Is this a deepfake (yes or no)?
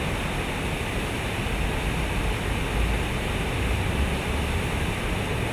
no